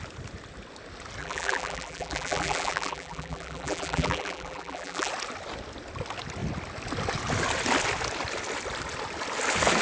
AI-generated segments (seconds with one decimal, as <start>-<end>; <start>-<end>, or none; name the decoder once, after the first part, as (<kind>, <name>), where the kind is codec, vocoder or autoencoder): 1.2-5.1 (vocoder, BigVGAN v2)